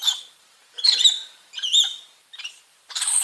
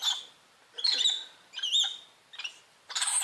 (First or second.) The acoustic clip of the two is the second